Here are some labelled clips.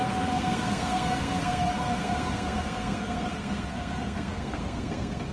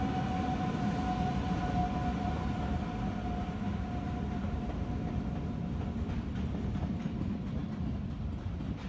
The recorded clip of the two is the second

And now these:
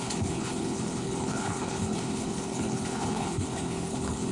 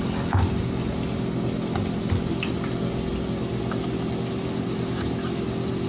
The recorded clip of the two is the second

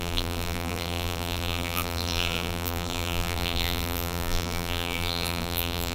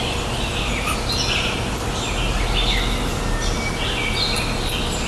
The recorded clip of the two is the second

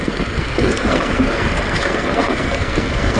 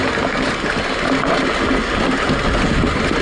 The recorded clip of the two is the second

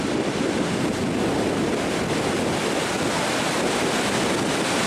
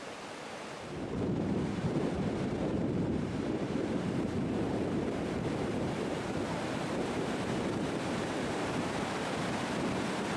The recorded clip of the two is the first